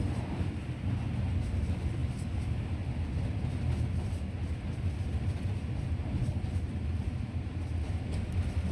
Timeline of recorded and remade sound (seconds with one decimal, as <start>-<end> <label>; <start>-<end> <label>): 0.0-8.7 recorded